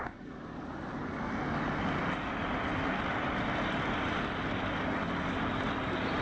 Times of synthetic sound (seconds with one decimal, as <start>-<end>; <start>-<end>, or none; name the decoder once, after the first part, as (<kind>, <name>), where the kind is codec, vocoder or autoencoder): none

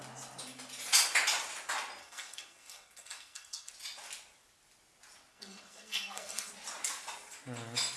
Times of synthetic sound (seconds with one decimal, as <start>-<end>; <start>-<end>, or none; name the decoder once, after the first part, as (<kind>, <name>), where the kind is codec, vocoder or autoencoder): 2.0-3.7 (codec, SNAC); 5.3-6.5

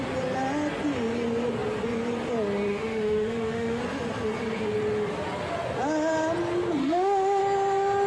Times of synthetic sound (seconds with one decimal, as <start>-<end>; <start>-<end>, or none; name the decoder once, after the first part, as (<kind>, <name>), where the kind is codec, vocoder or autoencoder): 2.7-3.8 (autoencoder, DAC-VAE); 6.8-7.4

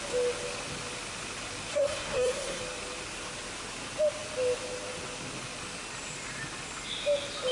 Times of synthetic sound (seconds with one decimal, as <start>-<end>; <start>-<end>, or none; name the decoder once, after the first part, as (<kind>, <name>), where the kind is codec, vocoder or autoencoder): 1.7-2.6 (codec, SNAC)

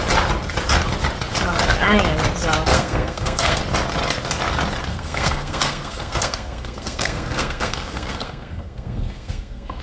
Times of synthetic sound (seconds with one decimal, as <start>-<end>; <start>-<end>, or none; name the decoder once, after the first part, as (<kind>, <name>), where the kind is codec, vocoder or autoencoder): 2.7-3.6 (codec, SNAC); 4.9-9.8